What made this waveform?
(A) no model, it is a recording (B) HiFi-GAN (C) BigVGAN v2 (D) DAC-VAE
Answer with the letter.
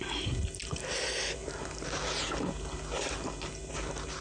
A